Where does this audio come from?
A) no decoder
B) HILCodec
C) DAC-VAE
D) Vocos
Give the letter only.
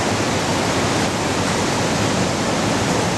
A